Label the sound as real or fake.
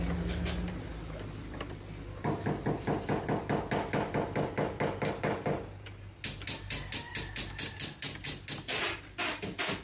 real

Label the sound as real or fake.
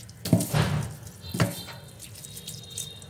real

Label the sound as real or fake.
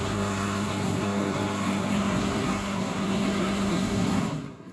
fake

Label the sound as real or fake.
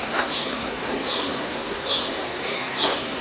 fake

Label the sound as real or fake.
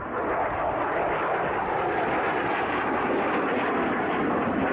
real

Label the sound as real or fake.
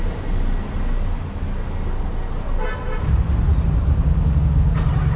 real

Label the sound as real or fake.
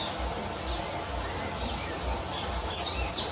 real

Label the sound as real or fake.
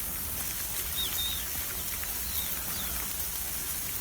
real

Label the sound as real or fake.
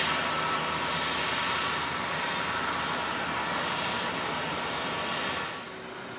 real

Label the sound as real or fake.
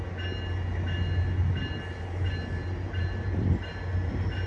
real